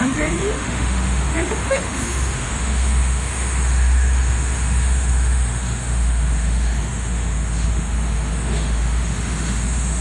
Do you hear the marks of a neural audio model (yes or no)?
yes